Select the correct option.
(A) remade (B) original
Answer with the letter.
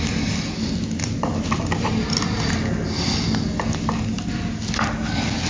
B